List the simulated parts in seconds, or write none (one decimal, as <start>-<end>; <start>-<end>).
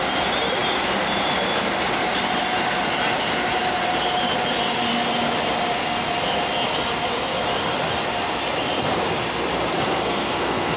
9.8-10.8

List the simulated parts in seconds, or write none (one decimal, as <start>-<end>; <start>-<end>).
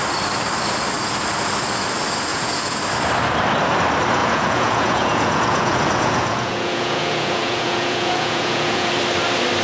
2.3-2.8; 4.2-8.9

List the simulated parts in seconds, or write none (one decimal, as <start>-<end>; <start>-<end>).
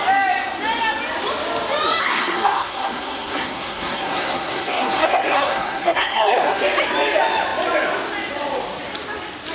2.0-6.6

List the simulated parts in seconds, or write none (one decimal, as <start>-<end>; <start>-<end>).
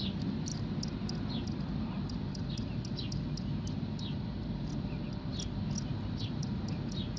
none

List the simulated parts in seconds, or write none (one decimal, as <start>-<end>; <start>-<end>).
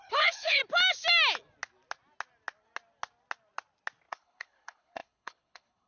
0.0-0.6; 4.1-5.9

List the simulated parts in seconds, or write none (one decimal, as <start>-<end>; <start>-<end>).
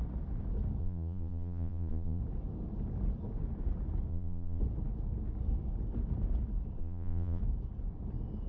0.8-2.2; 4.1-4.6; 6.8-7.4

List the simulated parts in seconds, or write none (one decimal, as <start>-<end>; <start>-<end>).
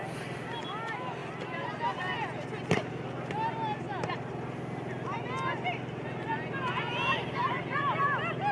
none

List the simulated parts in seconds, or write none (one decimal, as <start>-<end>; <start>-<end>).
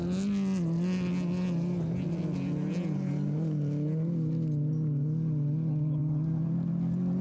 none